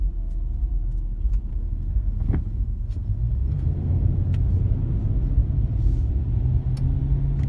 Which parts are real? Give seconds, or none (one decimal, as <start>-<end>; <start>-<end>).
0.0-1.5; 4.4-7.5

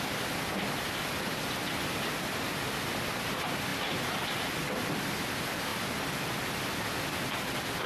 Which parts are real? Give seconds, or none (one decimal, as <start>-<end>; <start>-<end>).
0.0-7.9